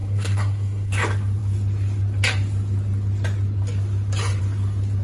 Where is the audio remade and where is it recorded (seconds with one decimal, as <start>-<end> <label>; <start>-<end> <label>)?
0.0-0.9 remade; 0.9-5.0 recorded